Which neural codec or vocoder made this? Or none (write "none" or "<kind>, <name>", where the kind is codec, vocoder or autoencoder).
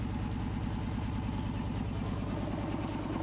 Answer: none